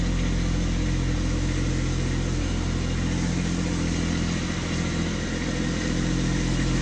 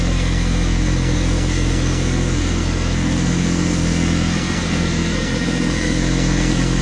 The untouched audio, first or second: first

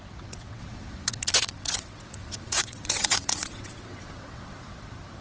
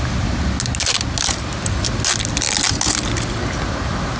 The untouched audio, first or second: second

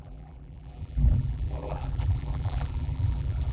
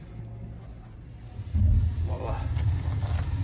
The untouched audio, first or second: second